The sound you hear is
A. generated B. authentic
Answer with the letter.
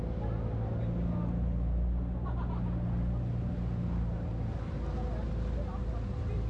B